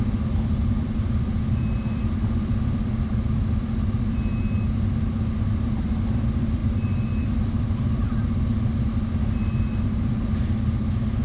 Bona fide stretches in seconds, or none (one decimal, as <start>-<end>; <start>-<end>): 0.0-6.6; 8.9-11.2